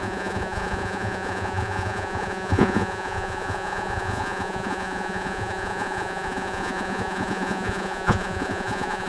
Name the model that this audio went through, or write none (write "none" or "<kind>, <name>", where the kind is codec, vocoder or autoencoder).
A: vocoder, Vocos